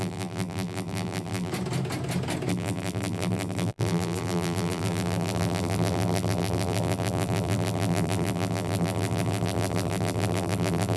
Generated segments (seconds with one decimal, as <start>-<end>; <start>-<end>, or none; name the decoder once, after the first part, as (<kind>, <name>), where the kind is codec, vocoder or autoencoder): 0.0-1.5 (vocoder, BigVGAN v2); 2.5-11.0

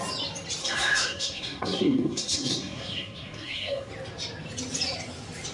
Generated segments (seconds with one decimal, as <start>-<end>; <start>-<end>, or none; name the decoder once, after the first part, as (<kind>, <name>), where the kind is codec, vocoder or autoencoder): 0.6-3.9 (codec, SNAC)

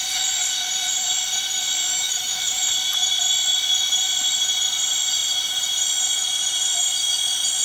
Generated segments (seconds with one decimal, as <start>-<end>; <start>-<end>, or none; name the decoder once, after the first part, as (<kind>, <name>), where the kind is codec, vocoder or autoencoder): 1.9-2.6 (autoencoder, DAC-VAE)

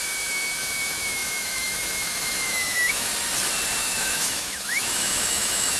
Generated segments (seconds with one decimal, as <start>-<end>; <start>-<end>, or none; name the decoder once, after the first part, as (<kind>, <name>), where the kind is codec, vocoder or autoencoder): 0.0-3.1 (autoencoder, DAC-VAE); 3.8-5.8